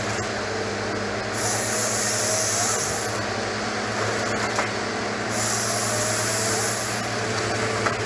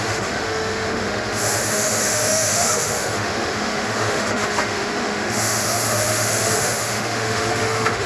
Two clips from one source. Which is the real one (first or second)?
first